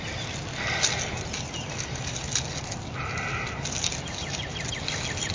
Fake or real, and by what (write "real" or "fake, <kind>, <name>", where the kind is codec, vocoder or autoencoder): real